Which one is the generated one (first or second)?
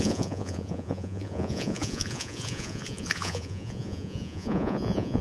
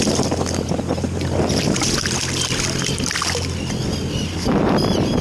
first